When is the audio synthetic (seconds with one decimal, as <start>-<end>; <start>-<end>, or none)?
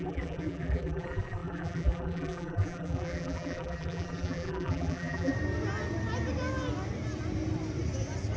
0.0-5.3